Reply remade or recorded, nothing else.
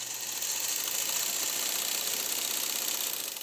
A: recorded